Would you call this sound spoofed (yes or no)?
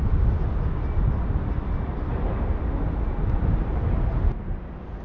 no